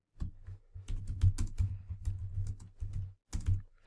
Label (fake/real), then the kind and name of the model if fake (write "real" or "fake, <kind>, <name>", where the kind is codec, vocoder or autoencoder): real